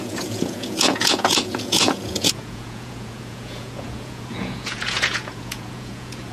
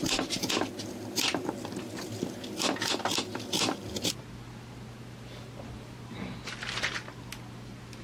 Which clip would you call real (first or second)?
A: second